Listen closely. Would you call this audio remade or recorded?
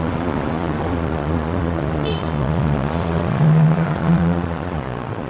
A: remade